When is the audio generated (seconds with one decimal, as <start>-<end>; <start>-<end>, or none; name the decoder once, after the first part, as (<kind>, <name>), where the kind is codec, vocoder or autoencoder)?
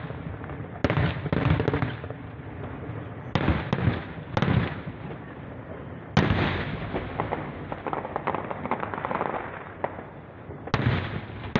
none